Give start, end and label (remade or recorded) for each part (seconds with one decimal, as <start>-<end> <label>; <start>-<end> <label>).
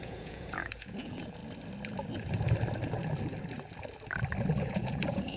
0.0-1.4 remade; 1.4-4.6 recorded; 4.6-5.4 remade